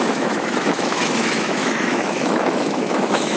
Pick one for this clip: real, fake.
fake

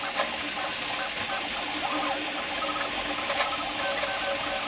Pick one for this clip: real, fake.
real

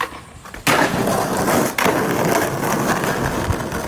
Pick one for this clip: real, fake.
real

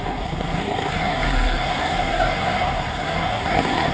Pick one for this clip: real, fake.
fake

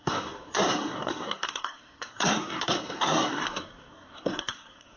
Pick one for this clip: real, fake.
fake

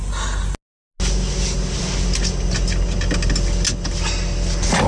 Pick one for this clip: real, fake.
real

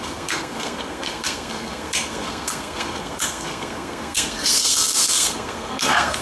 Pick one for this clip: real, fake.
fake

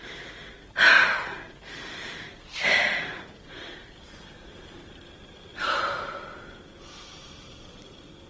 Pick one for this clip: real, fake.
real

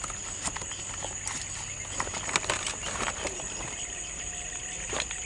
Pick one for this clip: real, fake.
real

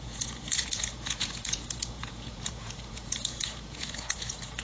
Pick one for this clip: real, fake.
fake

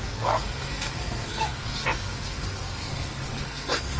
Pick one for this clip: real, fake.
fake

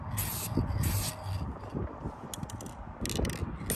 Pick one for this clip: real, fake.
real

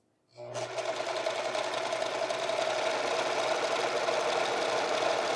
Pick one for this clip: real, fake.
real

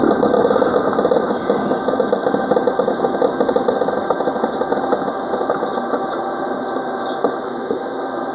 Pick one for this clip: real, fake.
real